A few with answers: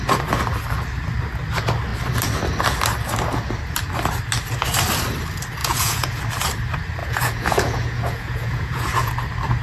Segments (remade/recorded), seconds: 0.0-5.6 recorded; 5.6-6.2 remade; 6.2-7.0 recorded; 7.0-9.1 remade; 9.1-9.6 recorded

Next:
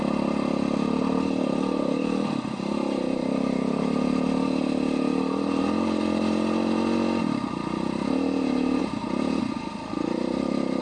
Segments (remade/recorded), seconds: 0.0-10.8 recorded

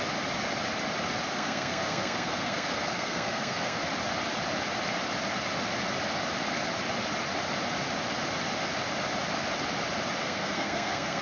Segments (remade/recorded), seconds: 0.0-1.3 recorded; 1.3-3.8 remade; 3.8-10.2 recorded; 10.2-11.2 remade

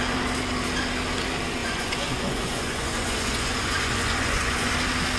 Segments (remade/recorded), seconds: 0.0-1.6 recorded; 1.6-4.7 remade; 4.7-5.2 recorded

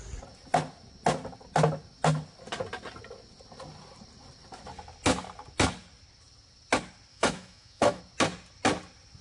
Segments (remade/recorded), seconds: 0.0-7.1 recorded; 7.1-8.0 remade; 8.0-9.2 recorded

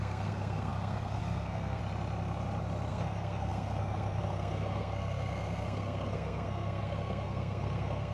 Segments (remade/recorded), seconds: 0.0-1.8 remade; 1.8-2.9 recorded; 2.9-8.1 remade